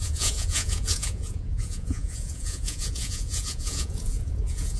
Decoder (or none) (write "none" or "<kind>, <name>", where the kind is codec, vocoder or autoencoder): vocoder, Vocos